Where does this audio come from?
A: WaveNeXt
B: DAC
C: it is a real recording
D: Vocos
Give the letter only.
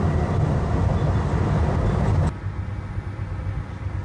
C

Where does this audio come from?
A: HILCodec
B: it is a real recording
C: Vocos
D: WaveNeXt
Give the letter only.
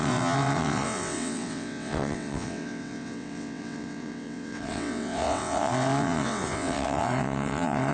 D